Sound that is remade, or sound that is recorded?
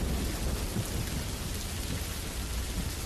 recorded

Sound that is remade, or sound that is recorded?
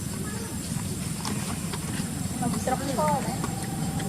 remade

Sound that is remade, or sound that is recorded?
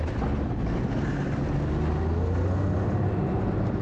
recorded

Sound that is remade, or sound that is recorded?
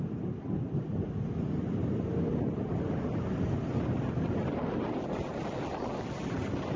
recorded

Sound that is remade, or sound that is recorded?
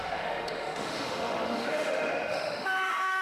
remade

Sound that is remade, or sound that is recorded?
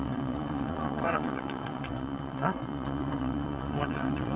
remade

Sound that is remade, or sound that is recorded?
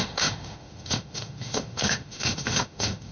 remade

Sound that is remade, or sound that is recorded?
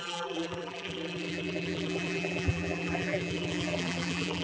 remade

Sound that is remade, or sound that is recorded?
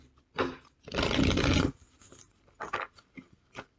recorded